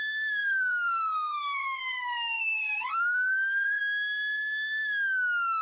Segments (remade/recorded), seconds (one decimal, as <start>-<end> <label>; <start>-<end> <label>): 0.0-0.4 recorded; 0.4-3.8 remade; 3.8-5.6 recorded